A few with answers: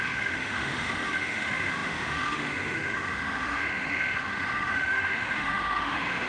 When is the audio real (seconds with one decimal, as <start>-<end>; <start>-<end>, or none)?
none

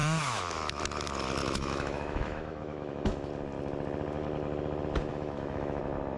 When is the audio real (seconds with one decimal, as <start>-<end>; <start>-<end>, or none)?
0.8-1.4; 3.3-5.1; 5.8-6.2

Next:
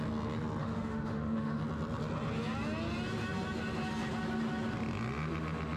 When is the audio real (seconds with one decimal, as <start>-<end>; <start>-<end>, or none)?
0.0-0.6; 1.6-5.8

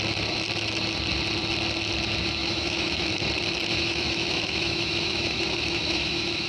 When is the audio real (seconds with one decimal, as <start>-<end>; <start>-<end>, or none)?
0.0-2.4; 3.1-3.7

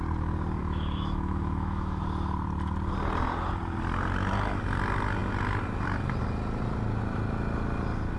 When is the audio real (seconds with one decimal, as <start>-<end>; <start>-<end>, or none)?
0.0-0.6; 2.0-8.2